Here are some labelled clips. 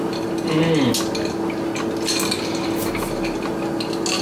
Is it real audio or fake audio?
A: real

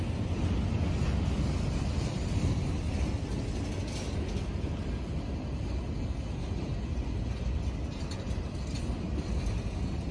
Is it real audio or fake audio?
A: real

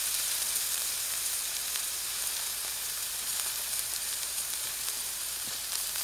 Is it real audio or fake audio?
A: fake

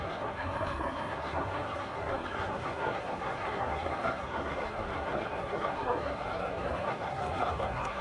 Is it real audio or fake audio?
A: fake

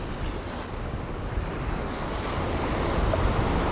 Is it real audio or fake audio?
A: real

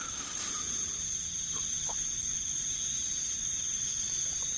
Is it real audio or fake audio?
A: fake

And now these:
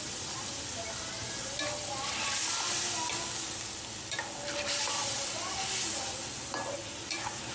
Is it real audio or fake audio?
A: real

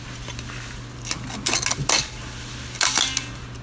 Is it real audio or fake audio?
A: real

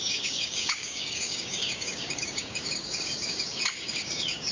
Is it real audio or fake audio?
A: fake